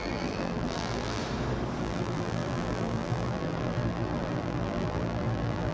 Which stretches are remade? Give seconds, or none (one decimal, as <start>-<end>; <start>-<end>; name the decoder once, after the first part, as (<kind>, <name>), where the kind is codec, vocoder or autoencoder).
0.0-1.2 (vocoder, BigVGAN v2); 1.8-5.7